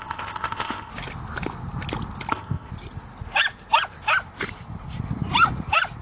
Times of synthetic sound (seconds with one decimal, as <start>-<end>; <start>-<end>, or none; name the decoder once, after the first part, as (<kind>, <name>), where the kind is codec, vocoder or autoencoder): 0.0-0.9 (codec, ZipCodec); 2.3-2.7